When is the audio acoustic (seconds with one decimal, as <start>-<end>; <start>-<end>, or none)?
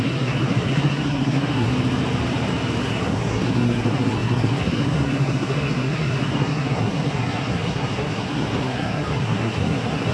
1.7-2.8